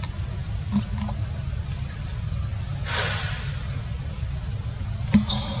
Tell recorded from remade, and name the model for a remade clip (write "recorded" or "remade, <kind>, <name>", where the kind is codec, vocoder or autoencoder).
recorded